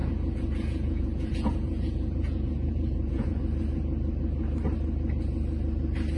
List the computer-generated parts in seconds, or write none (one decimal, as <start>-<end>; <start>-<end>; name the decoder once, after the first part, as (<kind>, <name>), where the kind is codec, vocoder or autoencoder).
0.0-3.4 (vocoder, Vocos)